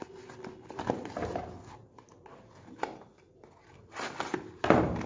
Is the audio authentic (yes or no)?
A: yes